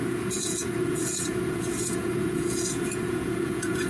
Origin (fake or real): fake